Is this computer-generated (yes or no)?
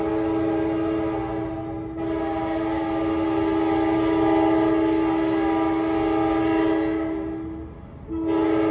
no